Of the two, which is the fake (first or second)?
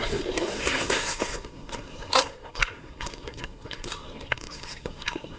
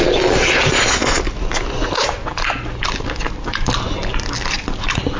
first